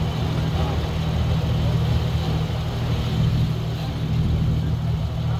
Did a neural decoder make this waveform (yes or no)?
no